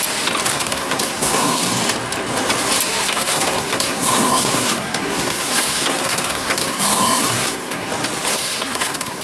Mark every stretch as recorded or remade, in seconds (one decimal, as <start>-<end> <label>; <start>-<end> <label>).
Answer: 0.0-0.5 recorded; 0.5-1.7 remade; 1.7-3.0 recorded; 3.0-7.9 remade; 7.9-8.3 recorded; 8.3-9.2 remade